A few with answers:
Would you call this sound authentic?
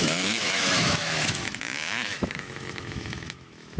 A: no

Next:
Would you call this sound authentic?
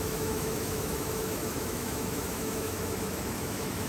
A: no